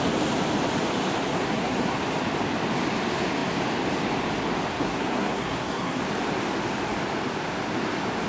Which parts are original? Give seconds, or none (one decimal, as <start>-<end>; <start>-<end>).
0.0-1.3; 2.0-4.7; 6.0-8.3